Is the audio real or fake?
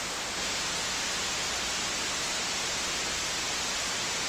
real